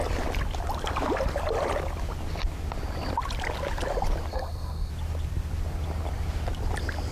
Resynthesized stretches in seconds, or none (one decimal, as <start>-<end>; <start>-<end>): 4.3-4.9